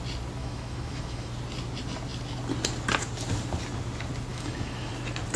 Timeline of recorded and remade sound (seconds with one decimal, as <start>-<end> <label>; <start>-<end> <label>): 0.0-0.4 recorded; 0.4-1.3 remade; 1.3-4.3 recorded; 4.3-4.9 remade; 4.9-5.4 recorded